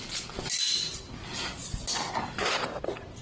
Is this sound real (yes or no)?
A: yes